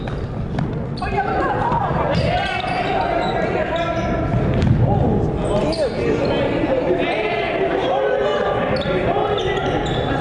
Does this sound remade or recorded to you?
recorded